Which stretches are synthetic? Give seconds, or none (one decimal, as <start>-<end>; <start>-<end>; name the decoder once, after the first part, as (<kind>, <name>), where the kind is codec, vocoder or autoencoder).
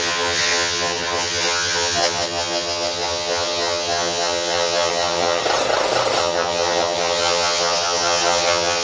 0.0-5.4 (vocoder, HiFi-GAN); 6.2-8.8